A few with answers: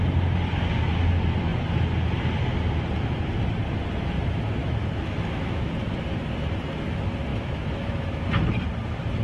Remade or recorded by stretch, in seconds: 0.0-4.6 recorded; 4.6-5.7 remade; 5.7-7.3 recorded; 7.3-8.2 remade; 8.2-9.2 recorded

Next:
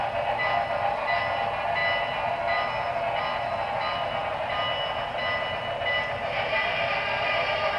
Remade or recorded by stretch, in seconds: 0.0-7.8 recorded

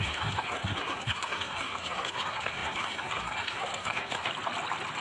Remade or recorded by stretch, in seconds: 0.0-4.3 remade; 4.3-5.0 recorded

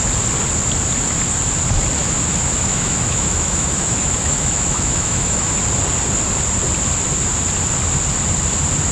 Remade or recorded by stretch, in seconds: 0.0-2.0 recorded; 2.0-5.6 remade; 5.6-8.9 recorded

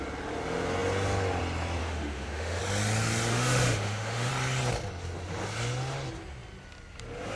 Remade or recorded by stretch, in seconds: 0.0-1.8 recorded; 1.8-2.6 remade; 2.6-3.3 recorded; 3.3-4.3 remade; 4.3-7.4 recorded